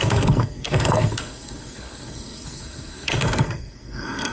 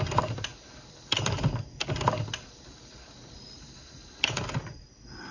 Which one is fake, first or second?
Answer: first